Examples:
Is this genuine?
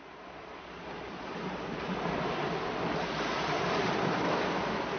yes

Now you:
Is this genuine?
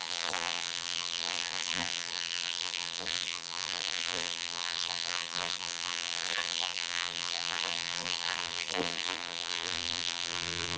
no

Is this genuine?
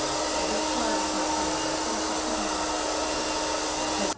yes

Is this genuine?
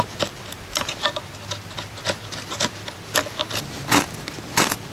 yes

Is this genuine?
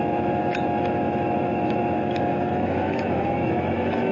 no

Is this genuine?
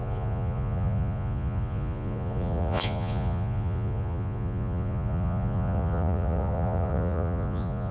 no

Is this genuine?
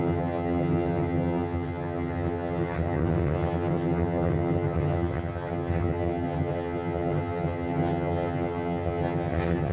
no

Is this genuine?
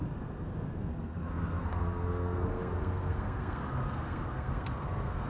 no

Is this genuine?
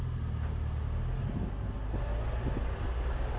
yes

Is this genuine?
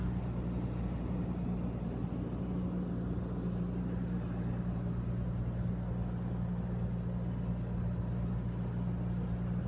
yes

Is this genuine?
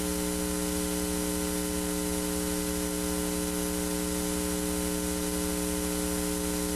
yes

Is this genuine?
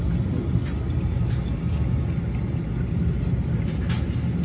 yes